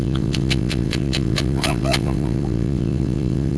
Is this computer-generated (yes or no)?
yes